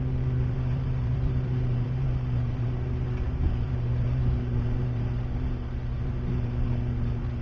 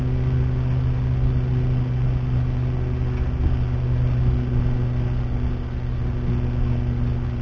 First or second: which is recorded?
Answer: second